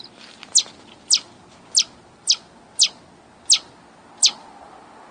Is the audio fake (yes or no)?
no